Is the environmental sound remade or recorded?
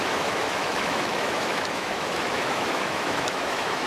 remade